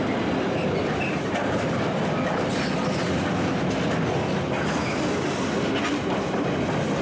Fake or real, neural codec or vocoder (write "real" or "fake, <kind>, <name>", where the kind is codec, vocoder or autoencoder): real